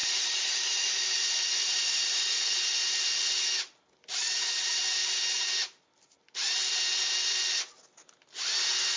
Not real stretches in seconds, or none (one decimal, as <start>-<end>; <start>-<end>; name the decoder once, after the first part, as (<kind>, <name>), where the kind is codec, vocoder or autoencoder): 0.0-2.6 (vocoder, Vocos)